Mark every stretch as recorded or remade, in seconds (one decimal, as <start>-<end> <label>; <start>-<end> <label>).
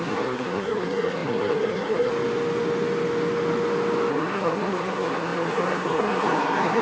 0.0-2.1 remade; 2.1-4.1 recorded; 4.1-6.8 remade